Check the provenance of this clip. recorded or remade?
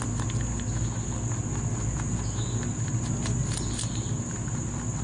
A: recorded